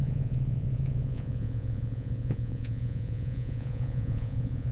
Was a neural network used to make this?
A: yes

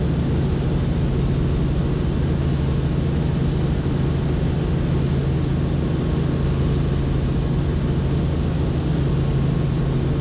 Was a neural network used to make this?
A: no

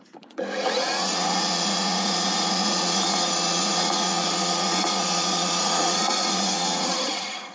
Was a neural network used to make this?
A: yes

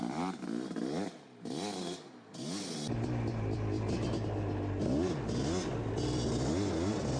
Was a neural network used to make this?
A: no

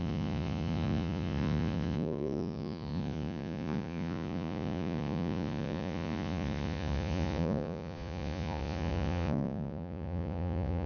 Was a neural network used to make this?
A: yes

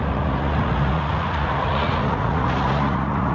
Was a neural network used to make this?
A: yes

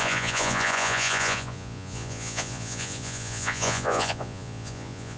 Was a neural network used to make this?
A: yes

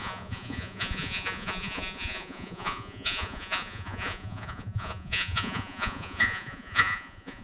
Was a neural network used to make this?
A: yes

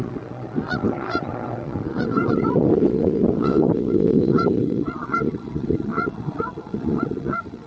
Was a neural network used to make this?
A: yes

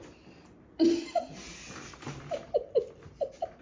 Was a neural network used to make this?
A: no